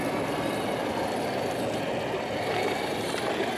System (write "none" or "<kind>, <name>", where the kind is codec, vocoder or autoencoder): none